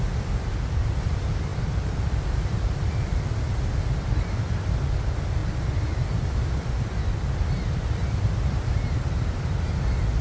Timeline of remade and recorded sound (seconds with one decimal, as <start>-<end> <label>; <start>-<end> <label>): 0.0-10.2 recorded